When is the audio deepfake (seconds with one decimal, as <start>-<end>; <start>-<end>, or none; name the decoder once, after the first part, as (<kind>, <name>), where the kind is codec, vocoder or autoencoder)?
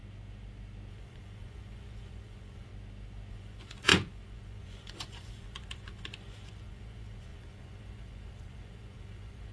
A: 0.9-2.7 (vocoder, Vocos); 3.3-9.5